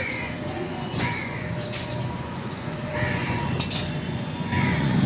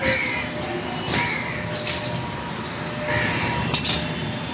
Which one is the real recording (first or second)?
second